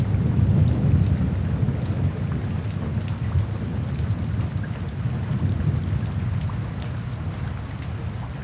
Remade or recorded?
recorded